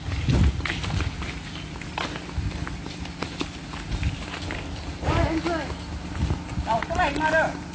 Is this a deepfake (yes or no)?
no